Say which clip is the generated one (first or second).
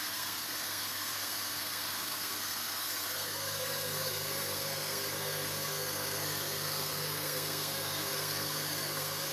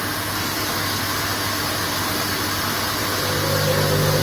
first